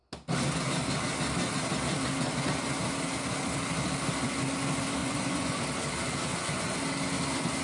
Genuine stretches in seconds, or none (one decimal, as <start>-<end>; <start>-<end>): 0.0-5.0; 5.6-6.3; 6.8-7.6